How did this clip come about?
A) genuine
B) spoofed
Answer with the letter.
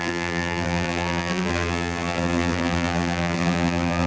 B